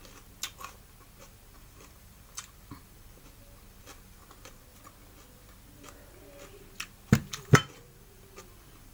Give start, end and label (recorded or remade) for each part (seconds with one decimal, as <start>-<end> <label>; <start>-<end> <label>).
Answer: 0.0-1.2 recorded; 1.2-4.7 remade; 4.7-7.1 recorded; 7.1-8.9 remade